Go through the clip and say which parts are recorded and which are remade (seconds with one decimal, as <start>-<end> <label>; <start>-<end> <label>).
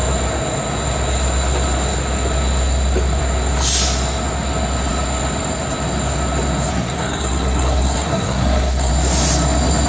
0.0-6.7 recorded; 6.7-8.9 remade; 8.9-9.9 recorded